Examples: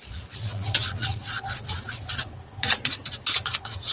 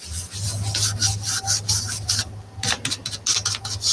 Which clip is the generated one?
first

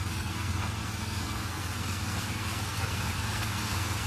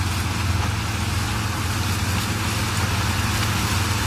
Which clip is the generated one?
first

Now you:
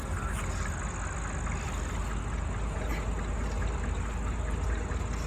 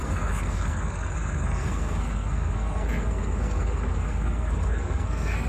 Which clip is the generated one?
second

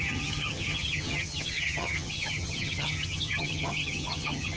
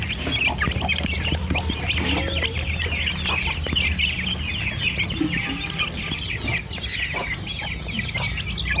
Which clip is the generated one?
first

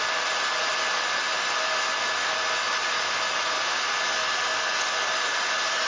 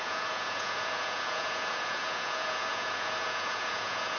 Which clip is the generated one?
second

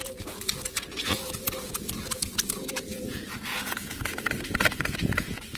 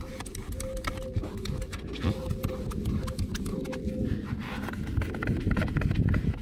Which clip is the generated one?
first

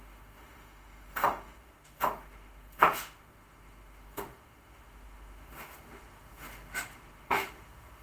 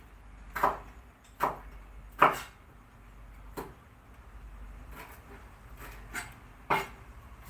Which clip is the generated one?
first